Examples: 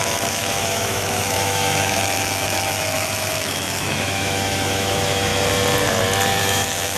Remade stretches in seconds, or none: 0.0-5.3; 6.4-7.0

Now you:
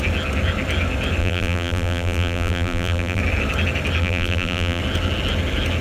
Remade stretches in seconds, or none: 1.2-3.2; 4.0-4.8

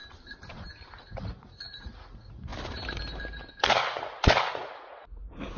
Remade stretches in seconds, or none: 1.0-2.5; 4.5-5.6

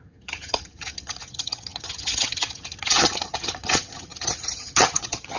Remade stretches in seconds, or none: 0.0-5.4

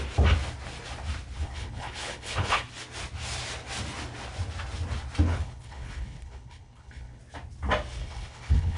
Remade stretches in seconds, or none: 1.4-2.6; 5.3-7.2; 8.0-8.8

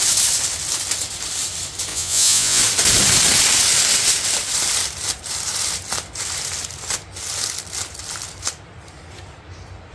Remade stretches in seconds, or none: 1.9-2.6